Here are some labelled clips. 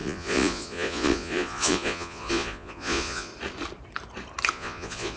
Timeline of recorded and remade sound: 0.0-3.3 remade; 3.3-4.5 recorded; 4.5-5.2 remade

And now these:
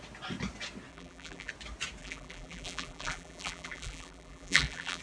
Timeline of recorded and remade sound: 0.0-0.9 recorded; 0.9-1.5 remade; 1.5-2.0 recorded; 2.0-5.0 remade

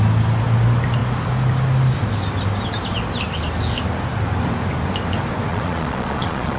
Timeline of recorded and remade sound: 0.0-5.5 recorded; 5.5-6.6 remade

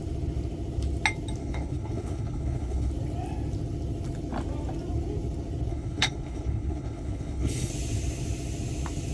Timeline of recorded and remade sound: 0.0-1.4 recorded; 1.4-2.9 remade; 2.9-5.7 recorded; 5.7-7.7 remade; 7.7-9.1 recorded

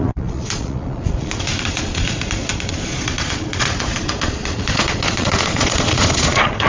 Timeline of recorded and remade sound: 0.0-6.7 remade

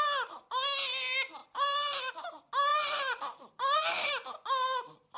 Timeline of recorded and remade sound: 0.0-1.4 recorded; 1.4-2.1 remade; 2.1-2.7 recorded; 2.7-4.1 remade; 4.1-5.2 recorded